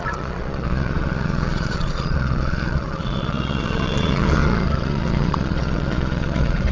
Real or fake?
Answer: fake